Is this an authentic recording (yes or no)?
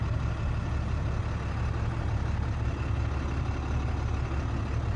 yes